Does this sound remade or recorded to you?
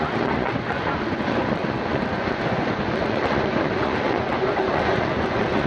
remade